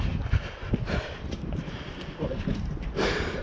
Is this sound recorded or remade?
remade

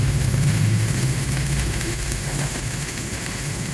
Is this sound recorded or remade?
remade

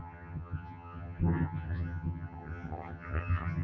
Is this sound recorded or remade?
remade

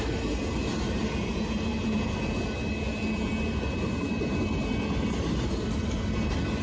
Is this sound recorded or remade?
recorded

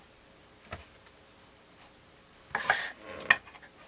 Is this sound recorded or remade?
recorded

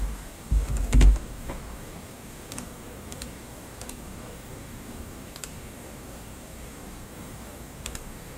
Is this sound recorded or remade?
remade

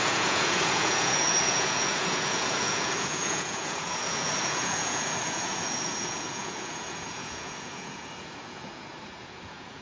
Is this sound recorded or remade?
remade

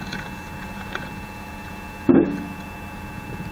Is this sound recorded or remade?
remade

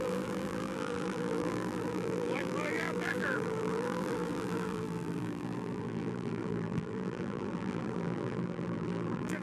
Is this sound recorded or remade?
remade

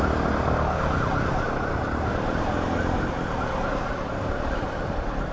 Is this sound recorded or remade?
recorded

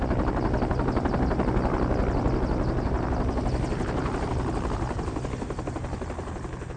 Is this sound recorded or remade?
recorded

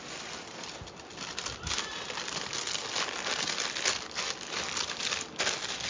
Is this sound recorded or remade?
recorded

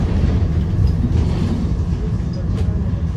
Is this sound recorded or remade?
recorded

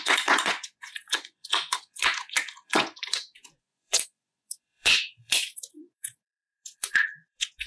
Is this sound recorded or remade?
remade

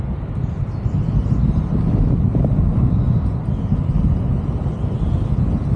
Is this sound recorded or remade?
recorded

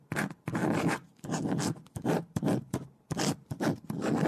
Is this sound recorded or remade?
recorded